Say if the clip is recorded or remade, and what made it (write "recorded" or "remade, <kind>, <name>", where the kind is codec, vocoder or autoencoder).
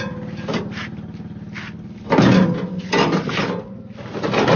recorded